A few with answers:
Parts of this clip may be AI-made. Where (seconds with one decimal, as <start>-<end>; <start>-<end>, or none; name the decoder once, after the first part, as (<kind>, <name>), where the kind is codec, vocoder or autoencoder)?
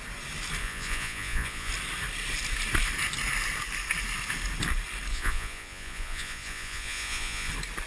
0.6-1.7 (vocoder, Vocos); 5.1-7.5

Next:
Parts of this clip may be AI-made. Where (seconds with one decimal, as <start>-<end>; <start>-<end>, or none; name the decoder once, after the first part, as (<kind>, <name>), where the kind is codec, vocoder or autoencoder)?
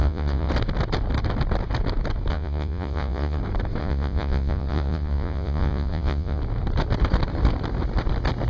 0.0-0.5 (vocoder, Vocos); 2.3-3.4; 3.8-6.4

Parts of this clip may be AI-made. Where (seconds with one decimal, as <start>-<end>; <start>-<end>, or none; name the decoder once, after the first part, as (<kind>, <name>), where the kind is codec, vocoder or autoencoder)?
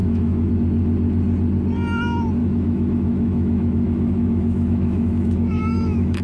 0.0-0.5 (autoencoder, DAC-VAE); 2.4-6.2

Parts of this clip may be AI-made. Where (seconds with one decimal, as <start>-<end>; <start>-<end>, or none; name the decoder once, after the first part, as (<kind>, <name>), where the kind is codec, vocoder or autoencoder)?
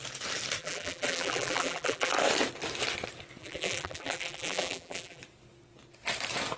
0.6-2.1 (vocoder, BigVGAN v2); 3.4-5.2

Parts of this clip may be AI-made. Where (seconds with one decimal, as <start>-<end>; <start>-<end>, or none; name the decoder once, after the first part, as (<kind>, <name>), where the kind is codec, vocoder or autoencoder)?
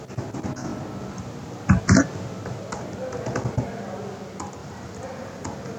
4.6-5.8 (vocoder, BigVGAN v2)